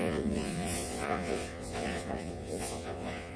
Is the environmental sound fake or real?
fake